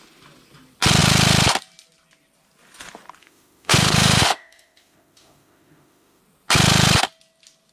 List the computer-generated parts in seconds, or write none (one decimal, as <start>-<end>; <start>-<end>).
3.2-6.2